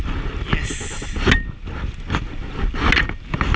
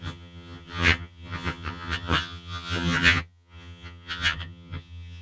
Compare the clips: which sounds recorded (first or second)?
first